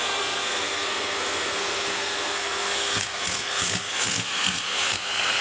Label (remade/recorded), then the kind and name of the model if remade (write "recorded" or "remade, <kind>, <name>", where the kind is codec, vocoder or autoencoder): remade, codec, SNAC